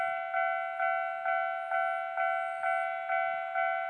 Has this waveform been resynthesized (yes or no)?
no